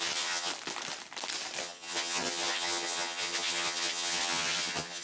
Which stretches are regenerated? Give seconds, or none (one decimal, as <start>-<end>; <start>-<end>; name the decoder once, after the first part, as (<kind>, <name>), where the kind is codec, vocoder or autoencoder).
0.0-0.5 (vocoder, HiFi-GAN); 1.6-5.0